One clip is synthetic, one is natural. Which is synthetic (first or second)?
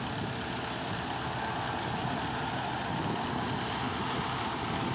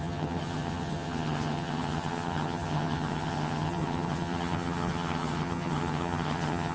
second